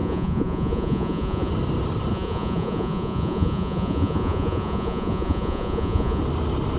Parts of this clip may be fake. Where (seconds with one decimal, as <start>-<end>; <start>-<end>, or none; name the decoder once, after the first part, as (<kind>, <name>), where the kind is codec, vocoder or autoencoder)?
0.0-1.5 (vocoder, Vocos); 2.1-6.2